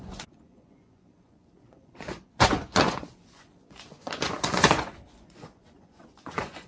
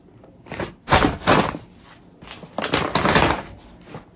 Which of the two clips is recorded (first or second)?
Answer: second